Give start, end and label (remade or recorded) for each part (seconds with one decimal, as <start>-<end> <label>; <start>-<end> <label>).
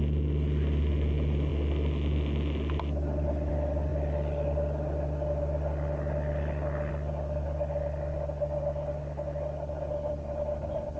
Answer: 0.0-11.0 recorded